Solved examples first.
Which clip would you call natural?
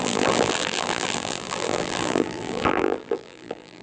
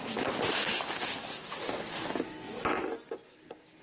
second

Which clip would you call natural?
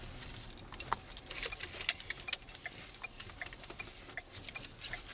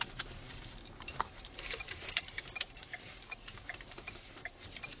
first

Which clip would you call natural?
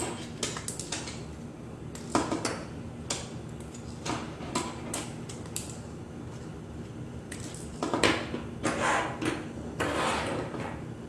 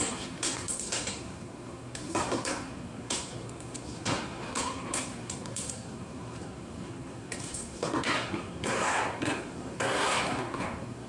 first